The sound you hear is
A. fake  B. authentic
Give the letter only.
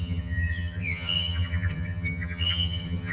A